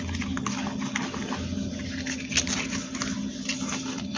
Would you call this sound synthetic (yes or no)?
no